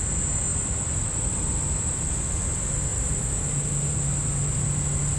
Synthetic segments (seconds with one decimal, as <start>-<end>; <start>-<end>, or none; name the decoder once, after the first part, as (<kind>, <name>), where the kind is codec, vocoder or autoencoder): 0.5-1.9 (vocoder, BigVGAN v2); 2.9-3.7